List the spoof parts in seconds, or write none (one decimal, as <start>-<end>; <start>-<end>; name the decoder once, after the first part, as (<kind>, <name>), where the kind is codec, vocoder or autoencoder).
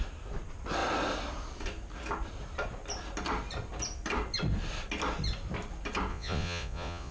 6.1-7.1 (vocoder, Vocos)